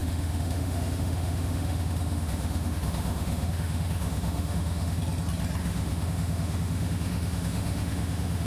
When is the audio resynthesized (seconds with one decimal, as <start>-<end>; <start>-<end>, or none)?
0.0-5.0; 5.6-8.5